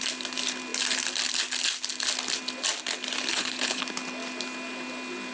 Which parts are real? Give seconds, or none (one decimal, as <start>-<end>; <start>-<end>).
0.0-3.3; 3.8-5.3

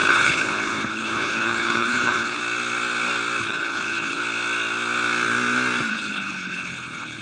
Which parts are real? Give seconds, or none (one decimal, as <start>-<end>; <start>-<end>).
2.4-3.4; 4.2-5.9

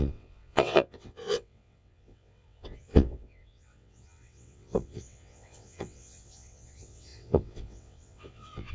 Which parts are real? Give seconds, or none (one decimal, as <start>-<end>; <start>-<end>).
none

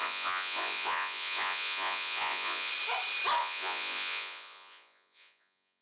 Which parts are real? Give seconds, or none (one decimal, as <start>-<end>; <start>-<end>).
2.7-3.4